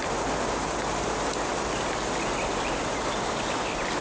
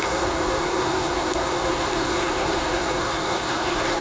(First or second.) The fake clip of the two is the second